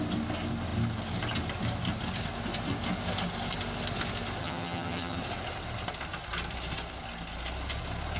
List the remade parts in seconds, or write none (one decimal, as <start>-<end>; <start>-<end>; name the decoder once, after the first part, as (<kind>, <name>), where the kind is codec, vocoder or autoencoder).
4.4-5.2 (vocoder, HiFi-GAN)